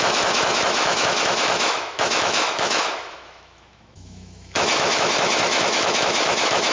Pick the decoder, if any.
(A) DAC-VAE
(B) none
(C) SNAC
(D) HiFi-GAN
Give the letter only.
A